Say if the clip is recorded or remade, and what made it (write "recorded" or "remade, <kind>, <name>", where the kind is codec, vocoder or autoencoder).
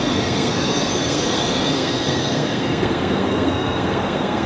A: remade, codec, SNAC